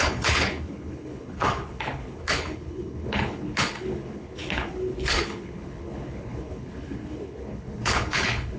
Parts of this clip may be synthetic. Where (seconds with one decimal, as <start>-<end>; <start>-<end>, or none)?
0.0-8.6